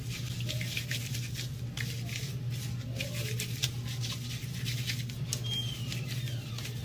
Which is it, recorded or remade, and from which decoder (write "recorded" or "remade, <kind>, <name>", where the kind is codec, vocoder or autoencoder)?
recorded